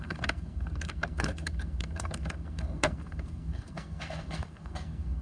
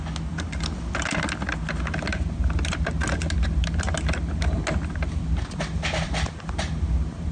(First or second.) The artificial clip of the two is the first